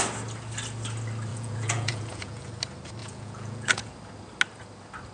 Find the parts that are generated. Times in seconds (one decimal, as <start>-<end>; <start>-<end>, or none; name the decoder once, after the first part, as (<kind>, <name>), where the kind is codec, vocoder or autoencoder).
1.3-2.5 (vocoder, Vocos); 3.0-3.9